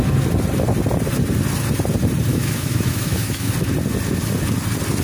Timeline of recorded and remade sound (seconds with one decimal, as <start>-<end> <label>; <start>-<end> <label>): 0.0-2.3 recorded; 2.3-3.5 remade; 3.5-5.0 recorded